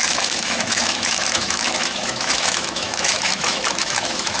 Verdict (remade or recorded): remade